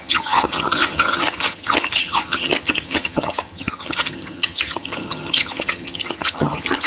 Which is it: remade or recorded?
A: remade